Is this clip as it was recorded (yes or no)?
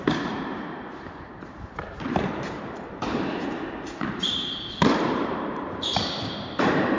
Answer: no